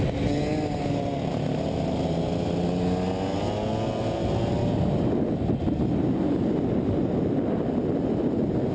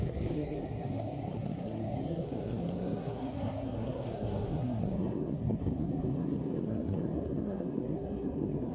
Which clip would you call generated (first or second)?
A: second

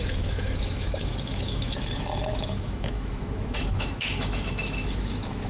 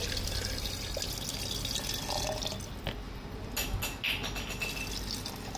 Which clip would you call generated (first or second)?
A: first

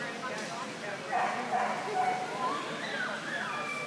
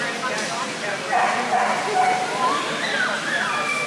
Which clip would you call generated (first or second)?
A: second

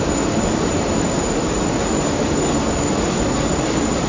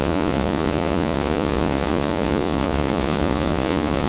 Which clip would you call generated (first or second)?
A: second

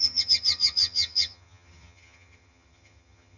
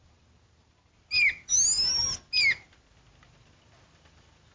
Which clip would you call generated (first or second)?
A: first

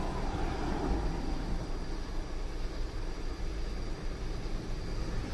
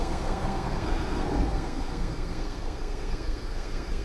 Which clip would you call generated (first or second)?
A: second